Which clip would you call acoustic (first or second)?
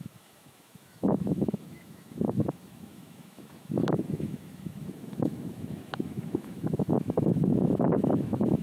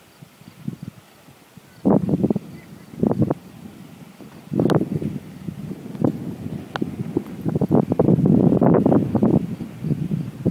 second